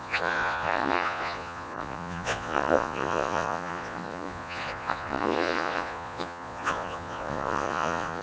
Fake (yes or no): yes